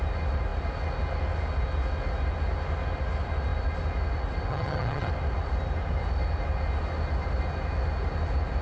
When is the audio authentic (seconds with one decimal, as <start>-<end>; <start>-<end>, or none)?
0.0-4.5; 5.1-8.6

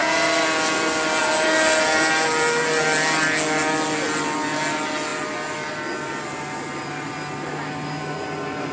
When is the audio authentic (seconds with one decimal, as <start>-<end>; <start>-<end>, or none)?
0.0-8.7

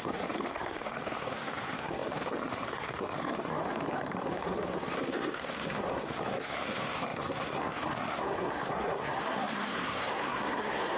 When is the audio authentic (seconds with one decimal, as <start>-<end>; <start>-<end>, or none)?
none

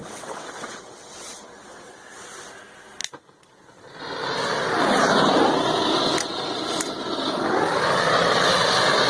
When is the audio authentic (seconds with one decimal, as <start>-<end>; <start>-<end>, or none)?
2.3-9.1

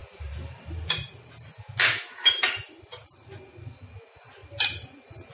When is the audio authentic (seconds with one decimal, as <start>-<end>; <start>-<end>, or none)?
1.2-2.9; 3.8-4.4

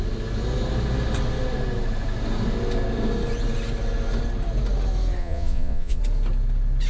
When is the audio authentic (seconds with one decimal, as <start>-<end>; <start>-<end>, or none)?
0.0-5.2; 6.0-6.9